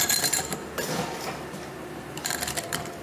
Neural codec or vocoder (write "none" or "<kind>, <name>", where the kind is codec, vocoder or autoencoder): vocoder, BigVGAN v2